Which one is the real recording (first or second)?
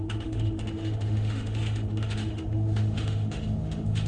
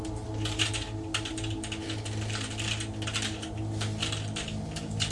second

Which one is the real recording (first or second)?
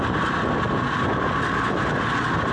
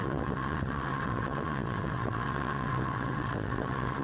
first